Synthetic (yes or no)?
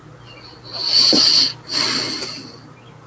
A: no